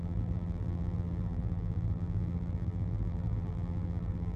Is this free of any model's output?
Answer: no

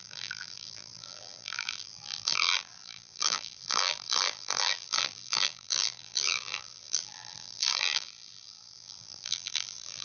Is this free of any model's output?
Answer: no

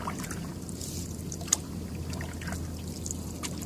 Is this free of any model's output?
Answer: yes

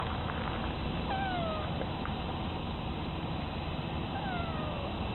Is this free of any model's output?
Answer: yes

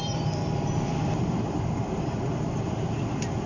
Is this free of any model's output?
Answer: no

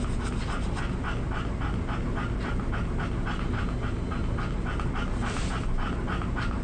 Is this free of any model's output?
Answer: yes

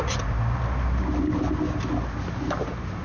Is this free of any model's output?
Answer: yes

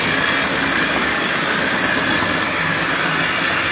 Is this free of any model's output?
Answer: yes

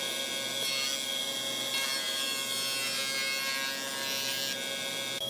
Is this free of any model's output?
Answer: yes